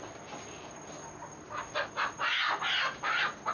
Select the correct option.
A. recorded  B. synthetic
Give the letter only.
A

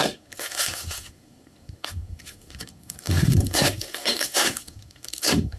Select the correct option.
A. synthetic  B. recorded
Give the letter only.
A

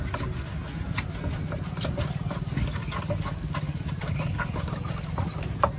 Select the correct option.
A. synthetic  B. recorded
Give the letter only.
B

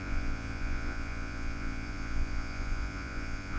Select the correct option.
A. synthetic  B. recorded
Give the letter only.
A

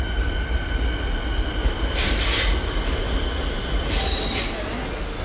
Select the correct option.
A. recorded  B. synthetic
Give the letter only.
A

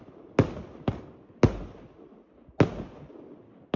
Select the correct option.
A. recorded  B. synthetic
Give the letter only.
A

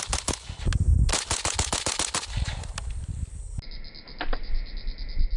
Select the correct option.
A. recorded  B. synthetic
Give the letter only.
A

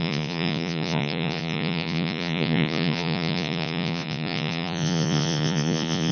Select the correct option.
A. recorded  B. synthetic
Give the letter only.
B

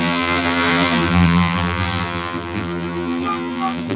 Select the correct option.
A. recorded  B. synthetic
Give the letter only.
B